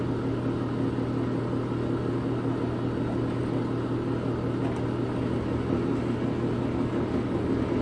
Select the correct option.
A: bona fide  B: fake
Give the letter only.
A